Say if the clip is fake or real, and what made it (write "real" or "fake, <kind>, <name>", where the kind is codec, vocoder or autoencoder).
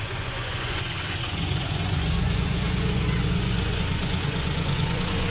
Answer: fake, vocoder, Vocos